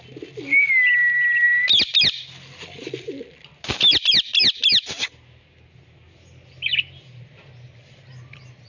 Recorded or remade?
recorded